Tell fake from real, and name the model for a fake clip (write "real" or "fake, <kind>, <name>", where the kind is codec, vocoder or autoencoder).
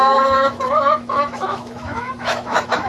fake, autoencoder, DAC-VAE